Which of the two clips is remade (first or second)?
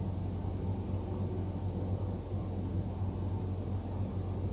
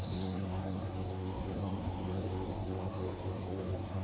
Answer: second